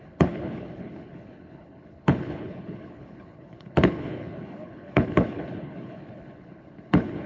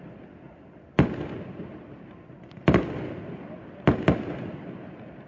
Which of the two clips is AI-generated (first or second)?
first